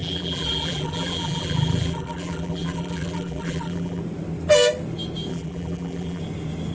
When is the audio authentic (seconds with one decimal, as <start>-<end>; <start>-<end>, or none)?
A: 4.0-5.3; 6.2-6.7